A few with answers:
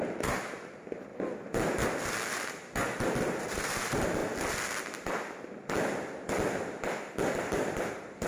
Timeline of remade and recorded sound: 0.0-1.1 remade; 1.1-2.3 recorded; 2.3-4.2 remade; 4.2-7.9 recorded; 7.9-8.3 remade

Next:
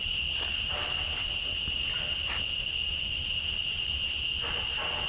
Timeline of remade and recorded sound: 0.0-5.1 recorded

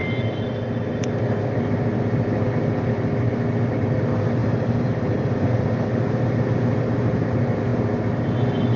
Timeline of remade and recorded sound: 0.0-4.4 recorded; 4.4-5.6 remade; 5.6-8.8 recorded